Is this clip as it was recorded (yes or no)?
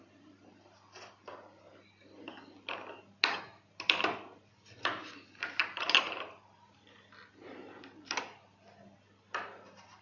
yes